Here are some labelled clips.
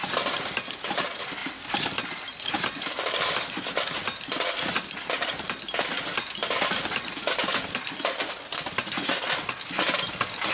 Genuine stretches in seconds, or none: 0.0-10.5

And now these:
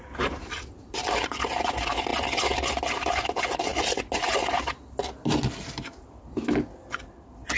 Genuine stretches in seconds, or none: 0.0-7.6

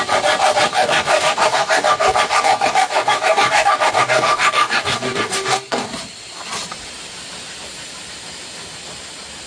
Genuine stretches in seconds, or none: 0.0-0.7; 5.9-9.5